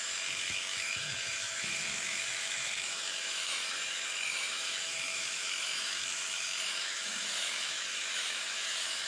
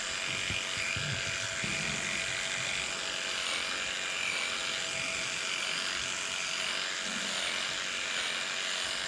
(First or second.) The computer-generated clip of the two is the first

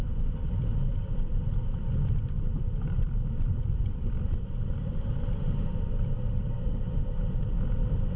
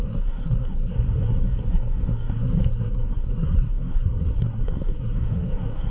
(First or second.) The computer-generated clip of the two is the second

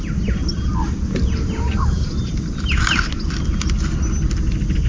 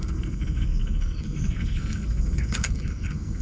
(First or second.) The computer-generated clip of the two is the second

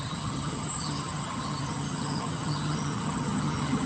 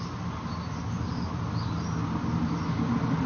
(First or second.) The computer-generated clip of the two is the first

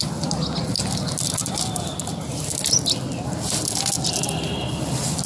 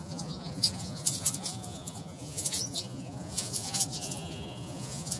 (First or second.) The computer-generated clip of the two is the second